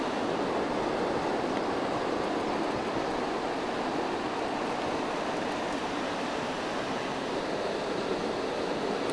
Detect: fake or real real